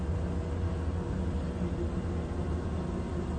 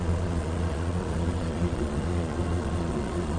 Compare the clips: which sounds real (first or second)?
first